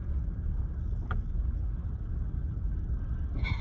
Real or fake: real